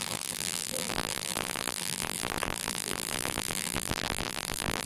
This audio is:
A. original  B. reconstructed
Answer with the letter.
B